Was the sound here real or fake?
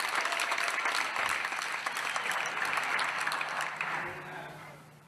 fake